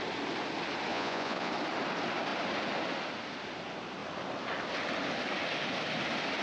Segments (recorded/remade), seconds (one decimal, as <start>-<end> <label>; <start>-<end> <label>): 0.0-0.9 recorded; 0.9-1.5 remade; 1.5-6.4 recorded